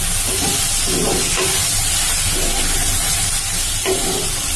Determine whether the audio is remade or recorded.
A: recorded